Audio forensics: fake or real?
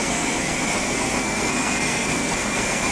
fake